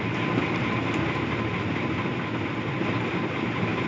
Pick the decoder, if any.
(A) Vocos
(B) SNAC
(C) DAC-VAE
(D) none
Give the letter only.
D